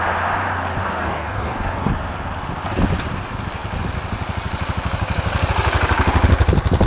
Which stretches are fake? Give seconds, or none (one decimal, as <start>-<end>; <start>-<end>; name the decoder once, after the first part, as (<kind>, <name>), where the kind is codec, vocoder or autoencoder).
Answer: 0.8-1.9 (codec, DAC)